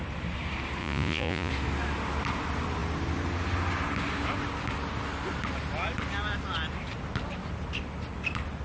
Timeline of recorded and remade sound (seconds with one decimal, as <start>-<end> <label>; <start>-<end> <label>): 0.0-0.8 recorded; 0.8-1.5 remade; 1.5-8.6 recorded